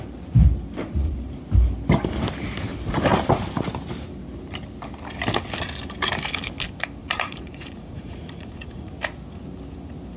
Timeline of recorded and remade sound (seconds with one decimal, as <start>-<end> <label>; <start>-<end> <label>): 0.0-0.8 recorded; 0.8-1.4 remade; 1.4-7.0 recorded; 7.0-8.9 remade; 8.9-10.2 recorded

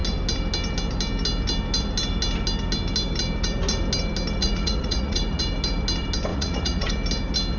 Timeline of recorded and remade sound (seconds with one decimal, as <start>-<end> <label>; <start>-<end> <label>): 0.0-4.4 recorded; 4.4-5.4 remade; 5.4-6.3 recorded; 6.3-6.9 remade; 6.9-7.6 recorded

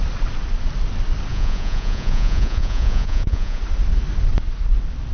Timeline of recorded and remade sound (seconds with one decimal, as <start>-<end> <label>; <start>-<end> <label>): 0.0-1.3 recorded; 1.3-3.6 remade; 3.6-5.1 recorded

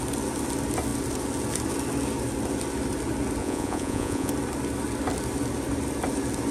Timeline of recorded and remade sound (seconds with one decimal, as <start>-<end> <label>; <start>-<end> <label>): 0.0-3.4 recorded; 3.4-4.3 remade; 4.3-6.5 recorded

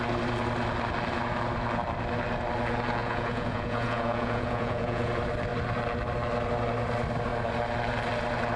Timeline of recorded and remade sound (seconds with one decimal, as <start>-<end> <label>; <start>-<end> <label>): 0.0-3.0 recorded; 3.0-5.1 remade; 5.1-8.6 recorded

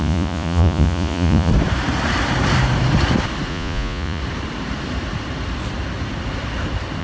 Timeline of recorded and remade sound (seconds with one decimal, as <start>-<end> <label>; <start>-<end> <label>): 0.0-1.5 remade; 1.5-3.5 recorded; 3.5-4.2 remade; 4.2-7.0 recorded